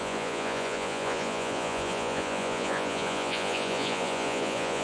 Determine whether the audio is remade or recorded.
remade